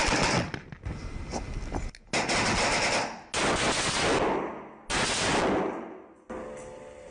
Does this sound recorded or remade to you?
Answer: recorded